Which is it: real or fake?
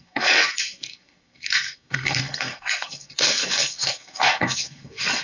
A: fake